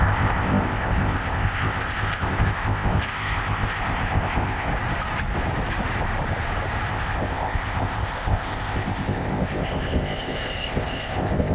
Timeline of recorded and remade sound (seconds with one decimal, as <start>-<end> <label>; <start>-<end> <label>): 0.0-4.7 remade; 4.7-6.9 recorded; 6.9-11.5 remade